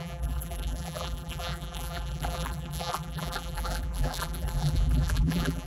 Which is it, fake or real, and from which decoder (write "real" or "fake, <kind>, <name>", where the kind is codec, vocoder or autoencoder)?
fake, vocoder, BigVGAN v2